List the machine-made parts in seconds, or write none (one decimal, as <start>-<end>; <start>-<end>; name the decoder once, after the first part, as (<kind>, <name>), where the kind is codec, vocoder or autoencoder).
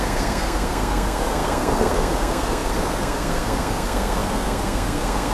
0.0-5.3 (codec, SNAC)